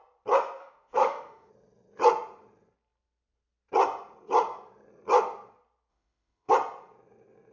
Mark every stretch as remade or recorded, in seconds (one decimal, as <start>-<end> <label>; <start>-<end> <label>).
0.0-0.6 recorded; 0.6-1.5 remade; 1.5-5.9 recorded; 5.9-6.5 remade; 6.5-7.5 recorded